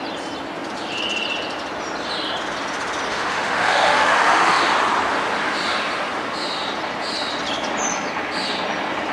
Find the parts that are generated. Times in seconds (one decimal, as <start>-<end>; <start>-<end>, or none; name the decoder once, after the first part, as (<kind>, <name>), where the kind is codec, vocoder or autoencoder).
3.1-4.7 (autoencoder, DAC-VAE)